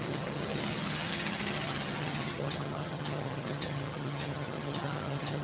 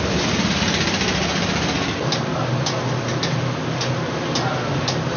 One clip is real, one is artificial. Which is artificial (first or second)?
first